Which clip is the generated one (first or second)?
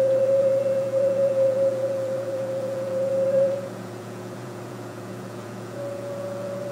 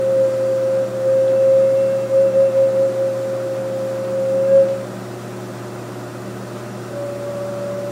first